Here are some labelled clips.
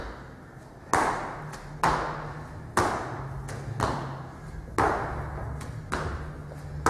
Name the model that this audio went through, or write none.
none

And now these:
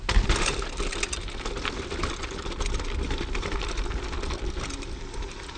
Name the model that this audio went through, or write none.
none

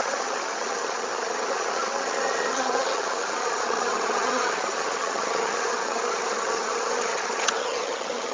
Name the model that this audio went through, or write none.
vocoder, HiFi-GAN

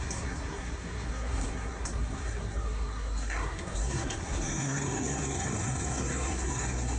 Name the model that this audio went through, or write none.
codec, SNAC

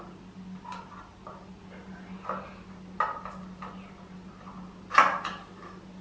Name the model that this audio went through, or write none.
none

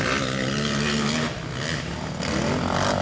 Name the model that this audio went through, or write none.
none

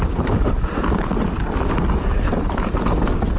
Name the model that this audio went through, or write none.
none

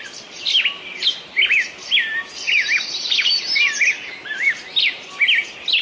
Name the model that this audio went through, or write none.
none